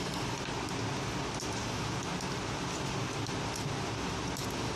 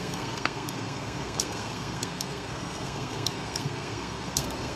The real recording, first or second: first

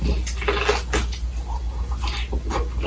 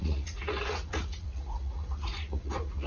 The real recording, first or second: first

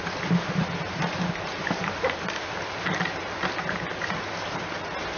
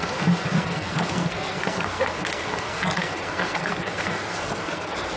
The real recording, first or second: first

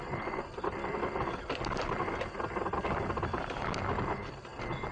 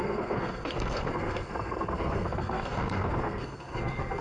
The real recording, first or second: first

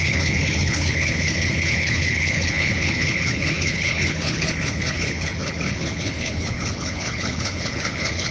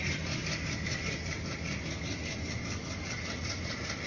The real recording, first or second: second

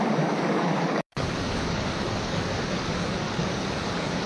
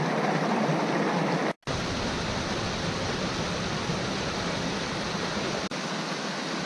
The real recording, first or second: second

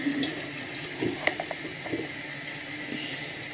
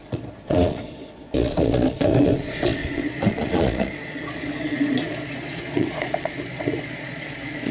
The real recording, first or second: first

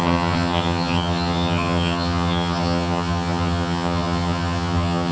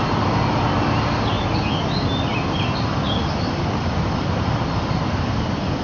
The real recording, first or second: second